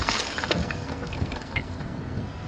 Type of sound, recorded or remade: remade